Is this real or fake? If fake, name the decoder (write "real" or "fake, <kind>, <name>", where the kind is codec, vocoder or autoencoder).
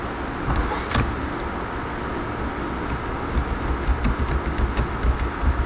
real